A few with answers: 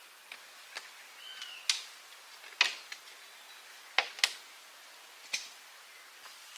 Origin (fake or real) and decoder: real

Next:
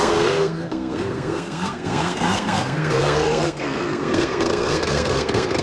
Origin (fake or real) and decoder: fake, codec, SNAC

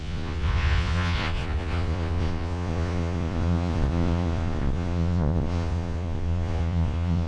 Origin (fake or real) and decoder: fake, vocoder, Vocos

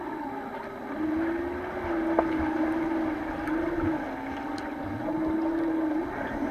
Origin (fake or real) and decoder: real